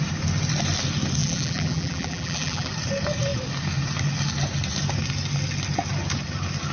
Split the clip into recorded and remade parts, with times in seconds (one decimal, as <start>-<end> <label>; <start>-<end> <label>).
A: 0.0-1.2 recorded; 1.2-2.7 remade; 2.7-6.7 recorded